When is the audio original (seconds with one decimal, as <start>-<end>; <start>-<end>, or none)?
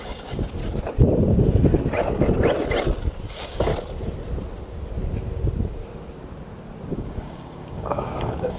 0.6-3.3; 3.7-6.9